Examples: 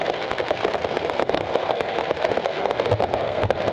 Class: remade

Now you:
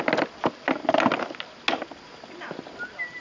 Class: recorded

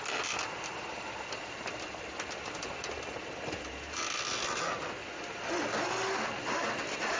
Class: recorded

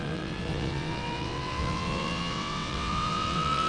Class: remade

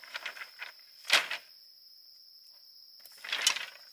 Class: recorded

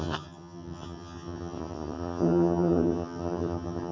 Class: remade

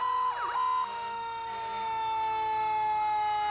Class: recorded